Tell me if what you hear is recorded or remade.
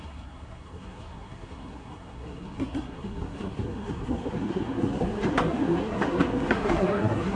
remade